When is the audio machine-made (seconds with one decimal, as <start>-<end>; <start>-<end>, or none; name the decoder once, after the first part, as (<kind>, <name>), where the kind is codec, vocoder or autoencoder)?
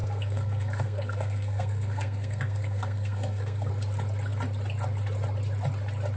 0.0-3.7 (codec, SNAC)